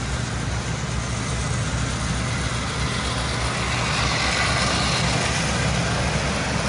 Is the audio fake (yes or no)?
no